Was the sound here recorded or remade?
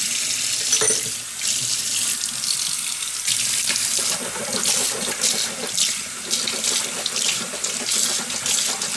recorded